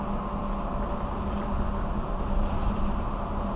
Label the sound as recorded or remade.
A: recorded